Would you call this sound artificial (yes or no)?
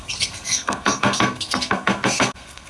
yes